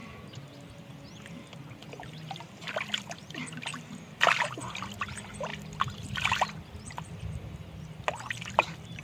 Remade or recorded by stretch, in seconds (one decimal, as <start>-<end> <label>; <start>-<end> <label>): 0.0-3.7 recorded; 3.7-4.2 remade; 4.2-5.5 recorded; 5.5-6.8 remade; 6.8-9.0 recorded